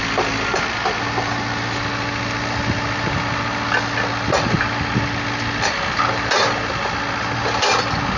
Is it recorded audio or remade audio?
recorded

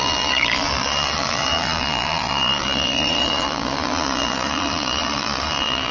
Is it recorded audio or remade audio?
remade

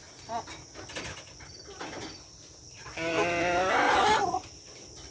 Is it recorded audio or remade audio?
recorded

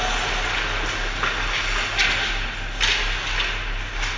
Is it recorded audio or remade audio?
recorded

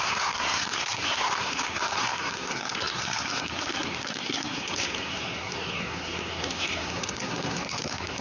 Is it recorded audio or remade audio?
remade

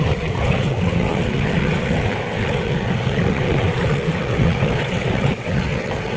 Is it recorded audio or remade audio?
remade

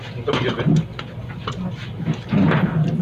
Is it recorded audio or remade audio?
recorded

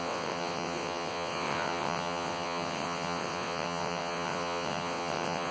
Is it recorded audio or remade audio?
remade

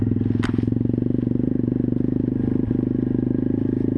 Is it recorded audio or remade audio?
recorded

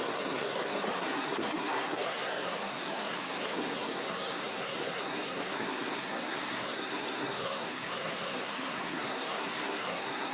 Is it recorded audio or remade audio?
remade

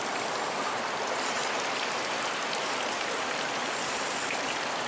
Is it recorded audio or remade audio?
remade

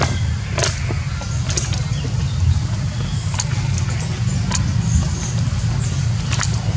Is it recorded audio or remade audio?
recorded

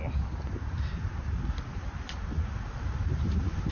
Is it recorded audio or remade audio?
recorded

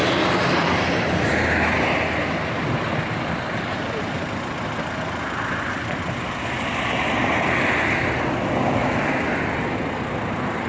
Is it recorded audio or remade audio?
recorded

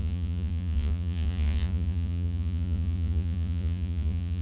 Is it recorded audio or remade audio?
remade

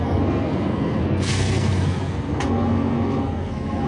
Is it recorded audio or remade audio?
remade